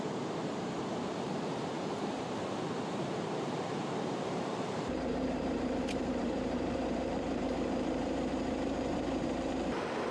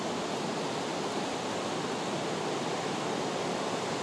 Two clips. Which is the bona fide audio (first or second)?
second